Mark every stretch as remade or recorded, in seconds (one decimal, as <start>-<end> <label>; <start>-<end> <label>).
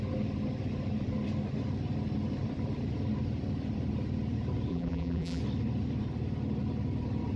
0.0-4.7 recorded; 4.7-5.4 remade; 5.4-7.4 recorded